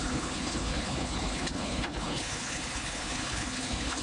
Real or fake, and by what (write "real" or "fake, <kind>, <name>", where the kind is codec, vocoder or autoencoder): fake, codec, HILCodec